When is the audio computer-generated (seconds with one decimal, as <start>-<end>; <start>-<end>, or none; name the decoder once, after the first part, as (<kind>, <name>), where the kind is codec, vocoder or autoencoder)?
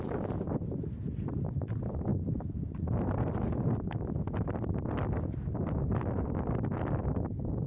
none